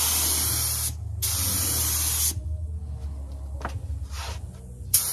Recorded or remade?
recorded